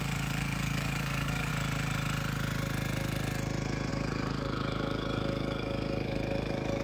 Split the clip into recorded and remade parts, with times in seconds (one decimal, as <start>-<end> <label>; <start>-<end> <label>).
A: 0.0-1.5 remade; 1.5-3.9 recorded; 3.9-6.8 remade